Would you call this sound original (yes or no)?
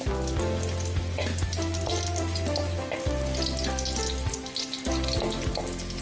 yes